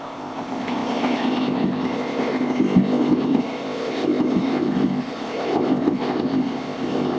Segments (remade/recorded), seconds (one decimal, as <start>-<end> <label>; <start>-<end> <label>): 0.0-7.2 remade